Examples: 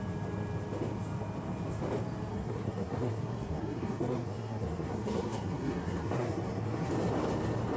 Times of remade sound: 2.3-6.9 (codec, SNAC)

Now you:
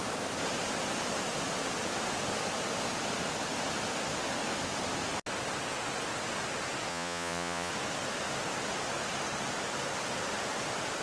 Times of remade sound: 6.9-7.7 (vocoder, Vocos)